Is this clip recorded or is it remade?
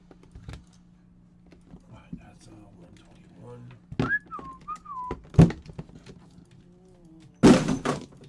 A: recorded